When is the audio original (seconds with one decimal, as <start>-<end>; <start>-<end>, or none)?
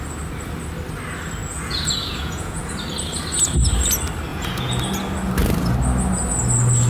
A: 0.0-1.4; 2.7-4.3; 4.8-6.9